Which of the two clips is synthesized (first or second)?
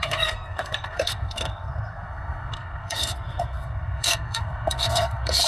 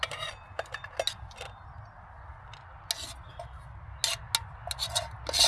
first